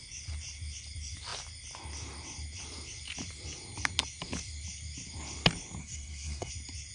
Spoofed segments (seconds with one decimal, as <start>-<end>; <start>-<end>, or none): 5.8-6.5